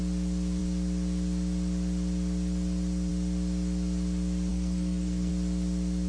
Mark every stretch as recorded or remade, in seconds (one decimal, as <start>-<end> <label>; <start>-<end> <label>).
0.0-4.5 recorded; 4.5-5.3 remade; 5.3-6.1 recorded